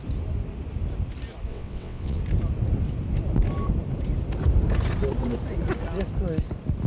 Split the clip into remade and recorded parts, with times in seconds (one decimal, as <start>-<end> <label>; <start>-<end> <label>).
0.0-1.5 recorded; 1.5-2.2 remade; 2.2-6.9 recorded